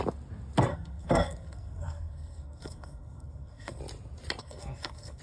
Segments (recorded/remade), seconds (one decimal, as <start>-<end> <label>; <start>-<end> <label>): 0.0-0.7 recorded; 0.7-3.8 remade; 3.8-4.4 recorded; 4.4-5.2 remade